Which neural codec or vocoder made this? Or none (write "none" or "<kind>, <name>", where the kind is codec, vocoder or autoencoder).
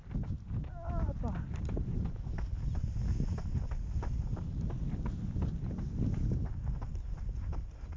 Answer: none